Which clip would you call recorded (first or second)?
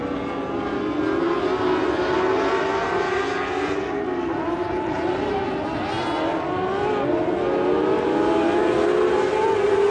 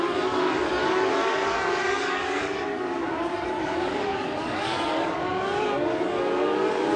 first